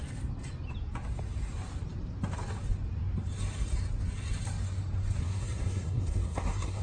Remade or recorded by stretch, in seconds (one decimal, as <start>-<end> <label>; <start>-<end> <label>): 0.0-5.2 recorded; 5.2-6.8 remade